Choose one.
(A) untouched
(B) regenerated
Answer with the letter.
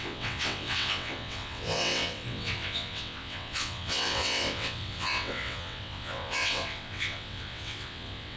B